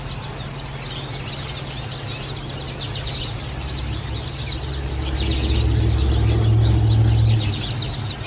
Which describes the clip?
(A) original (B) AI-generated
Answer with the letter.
A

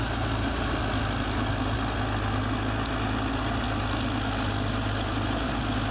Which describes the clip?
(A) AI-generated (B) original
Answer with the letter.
B